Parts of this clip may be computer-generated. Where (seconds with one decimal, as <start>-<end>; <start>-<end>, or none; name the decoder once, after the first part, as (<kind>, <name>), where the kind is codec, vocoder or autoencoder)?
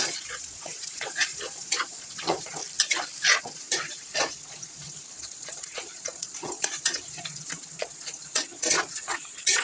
0.0-2.6 (vocoder, Vocos); 3.4-9.6